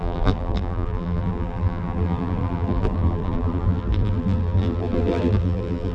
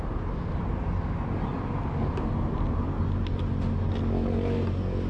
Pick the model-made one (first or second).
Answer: first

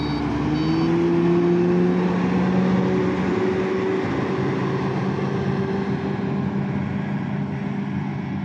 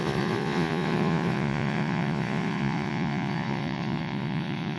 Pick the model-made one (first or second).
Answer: second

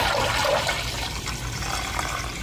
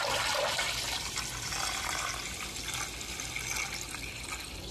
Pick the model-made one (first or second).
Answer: first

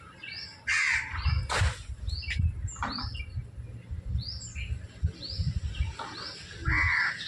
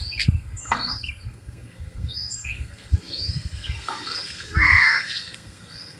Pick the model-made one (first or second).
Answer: second